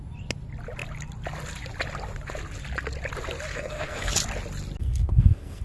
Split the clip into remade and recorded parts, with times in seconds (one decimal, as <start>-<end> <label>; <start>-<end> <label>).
0.0-3.5 recorded; 3.5-4.1 remade; 4.1-4.8 recorded; 4.8-5.6 remade